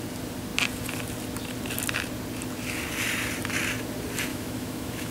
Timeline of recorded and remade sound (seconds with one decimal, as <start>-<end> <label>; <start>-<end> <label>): 0.0-4.3 recorded; 4.3-5.1 remade